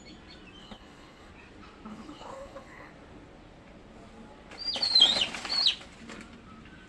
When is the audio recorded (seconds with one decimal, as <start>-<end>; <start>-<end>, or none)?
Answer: 0.0-0.6; 1.3-1.9; 2.9-6.9

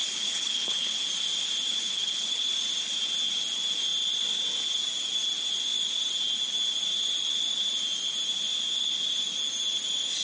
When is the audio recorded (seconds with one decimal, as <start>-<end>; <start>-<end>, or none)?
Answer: 0.9-1.7; 2.5-10.2

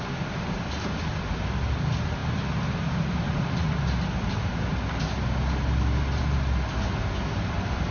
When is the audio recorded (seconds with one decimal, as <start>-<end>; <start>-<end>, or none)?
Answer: 0.0-7.9

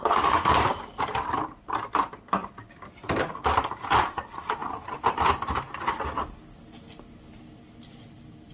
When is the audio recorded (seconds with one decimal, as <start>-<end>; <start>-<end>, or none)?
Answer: 0.0-8.5

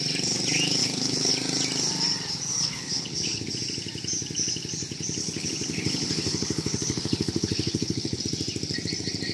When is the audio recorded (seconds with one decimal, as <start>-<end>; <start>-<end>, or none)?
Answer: 0.0-0.8; 1.3-2.5; 3.5-5.2; 8.2-9.3

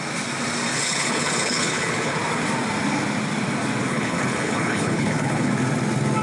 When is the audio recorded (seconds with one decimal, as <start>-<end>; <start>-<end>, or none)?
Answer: 0.0-0.7; 2.2-3.9; 5.5-6.2

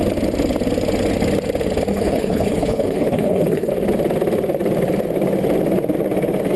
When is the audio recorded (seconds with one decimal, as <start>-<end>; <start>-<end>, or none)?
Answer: 0.0-1.9; 3.7-6.6

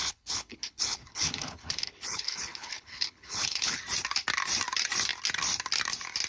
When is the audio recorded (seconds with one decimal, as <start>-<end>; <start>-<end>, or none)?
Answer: 3.8-6.3